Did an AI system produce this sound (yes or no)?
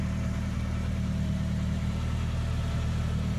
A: yes